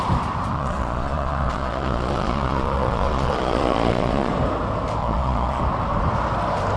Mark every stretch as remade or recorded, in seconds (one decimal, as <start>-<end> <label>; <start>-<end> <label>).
0.0-0.5 recorded; 0.5-4.3 remade; 4.3-5.0 recorded; 5.0-5.6 remade; 5.6-6.8 recorded